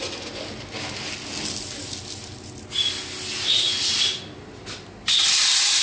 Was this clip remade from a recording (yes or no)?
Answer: no